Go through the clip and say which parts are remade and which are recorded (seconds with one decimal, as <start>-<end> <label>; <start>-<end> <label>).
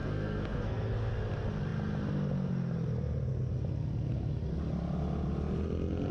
0.0-1.1 remade; 1.1-6.1 recorded